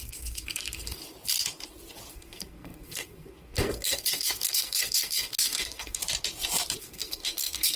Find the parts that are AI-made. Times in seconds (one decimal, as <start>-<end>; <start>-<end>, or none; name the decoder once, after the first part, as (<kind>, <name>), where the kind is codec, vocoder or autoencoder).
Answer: 0.0-1.0 (codec, SNAC); 2.1-6.0; 6.8-7.8